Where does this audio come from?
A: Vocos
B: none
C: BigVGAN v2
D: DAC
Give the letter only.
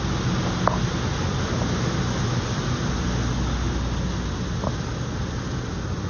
B